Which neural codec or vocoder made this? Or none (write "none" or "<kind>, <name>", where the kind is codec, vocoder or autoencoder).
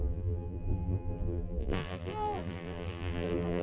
vocoder, BigVGAN v2